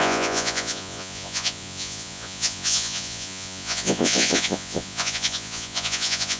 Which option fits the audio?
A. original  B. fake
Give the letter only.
B